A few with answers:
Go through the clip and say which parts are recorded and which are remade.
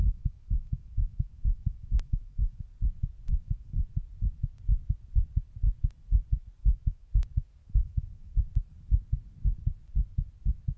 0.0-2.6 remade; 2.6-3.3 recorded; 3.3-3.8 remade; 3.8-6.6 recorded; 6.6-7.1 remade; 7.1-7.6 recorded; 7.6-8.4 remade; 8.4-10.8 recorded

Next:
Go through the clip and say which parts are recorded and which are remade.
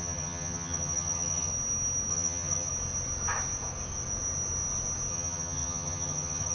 0.0-1.5 remade; 1.5-2.1 recorded; 2.1-2.7 remade; 2.7-5.1 recorded; 5.1-6.5 remade